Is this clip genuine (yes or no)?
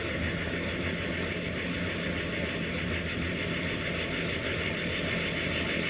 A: yes